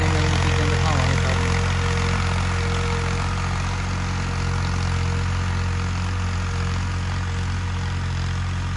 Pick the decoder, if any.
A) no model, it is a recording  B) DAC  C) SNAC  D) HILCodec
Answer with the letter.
A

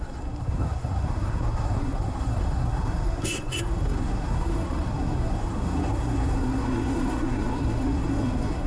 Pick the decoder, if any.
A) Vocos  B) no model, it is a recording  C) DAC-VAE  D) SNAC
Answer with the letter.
D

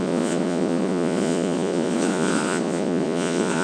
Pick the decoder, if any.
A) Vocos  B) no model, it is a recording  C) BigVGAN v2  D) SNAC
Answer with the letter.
A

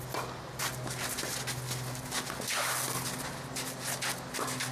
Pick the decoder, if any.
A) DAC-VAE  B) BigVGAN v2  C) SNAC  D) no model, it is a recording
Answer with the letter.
D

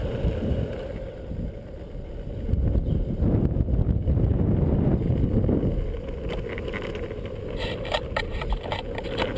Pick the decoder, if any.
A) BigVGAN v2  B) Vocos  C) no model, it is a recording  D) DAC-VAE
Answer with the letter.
C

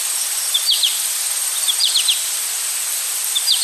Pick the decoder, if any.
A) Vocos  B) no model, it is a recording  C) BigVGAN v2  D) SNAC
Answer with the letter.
B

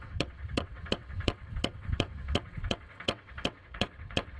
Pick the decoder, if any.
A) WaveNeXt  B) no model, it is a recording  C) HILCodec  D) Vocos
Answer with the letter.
A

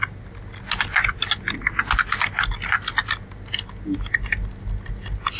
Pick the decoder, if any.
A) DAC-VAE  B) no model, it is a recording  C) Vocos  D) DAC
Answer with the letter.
B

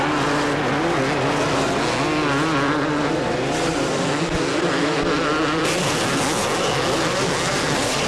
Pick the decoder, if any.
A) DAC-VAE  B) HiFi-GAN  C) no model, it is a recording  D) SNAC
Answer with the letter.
C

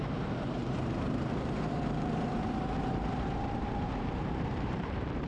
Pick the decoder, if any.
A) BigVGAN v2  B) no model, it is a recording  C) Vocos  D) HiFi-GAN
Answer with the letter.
A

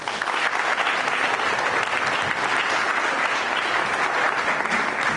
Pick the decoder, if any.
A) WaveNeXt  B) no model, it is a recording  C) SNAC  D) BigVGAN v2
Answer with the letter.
B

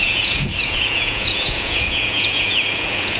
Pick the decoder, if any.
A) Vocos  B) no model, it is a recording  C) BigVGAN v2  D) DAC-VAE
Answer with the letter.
A